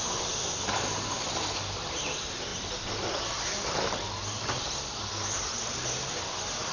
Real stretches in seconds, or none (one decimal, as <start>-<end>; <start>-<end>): 0.0-6.7